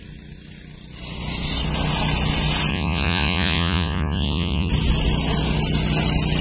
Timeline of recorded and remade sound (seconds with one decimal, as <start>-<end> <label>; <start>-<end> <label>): 0.0-2.7 recorded; 2.7-4.7 remade; 4.7-6.4 recorded